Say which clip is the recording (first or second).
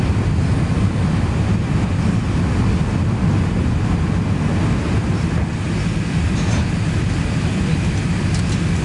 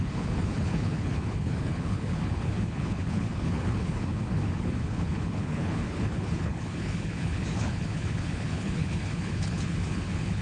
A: first